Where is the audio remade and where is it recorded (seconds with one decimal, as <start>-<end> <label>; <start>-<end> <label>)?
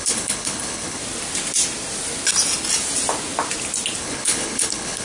0.0-1.0 remade; 1.0-4.0 recorded; 4.0-5.0 remade